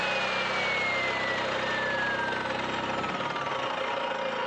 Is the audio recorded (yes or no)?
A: yes